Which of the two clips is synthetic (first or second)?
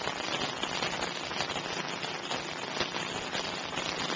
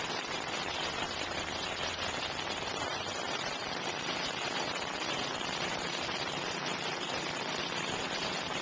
second